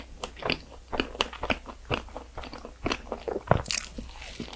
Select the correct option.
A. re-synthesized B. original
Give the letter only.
B